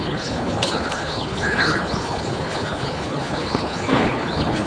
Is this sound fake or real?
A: fake